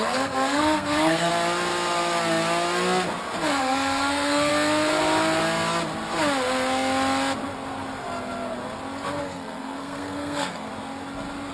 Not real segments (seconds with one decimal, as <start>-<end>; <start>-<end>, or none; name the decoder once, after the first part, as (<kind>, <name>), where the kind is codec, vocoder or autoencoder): 0.0-1.3 (codec, SNAC); 3.6-4.5; 9.2-10.7